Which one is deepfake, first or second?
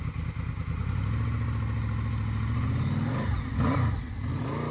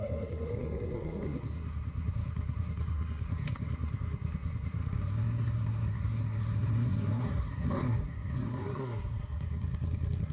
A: second